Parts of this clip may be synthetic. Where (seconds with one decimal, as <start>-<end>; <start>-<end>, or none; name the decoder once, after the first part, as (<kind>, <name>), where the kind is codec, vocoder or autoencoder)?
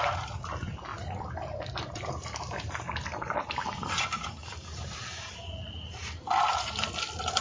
0.9-5.3 (vocoder, BigVGAN v2)